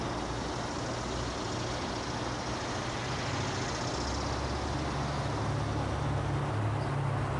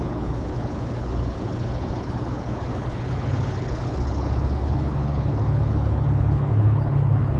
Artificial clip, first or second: second